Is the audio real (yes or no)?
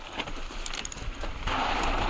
no